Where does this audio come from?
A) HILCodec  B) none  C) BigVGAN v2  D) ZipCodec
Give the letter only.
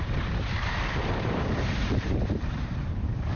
C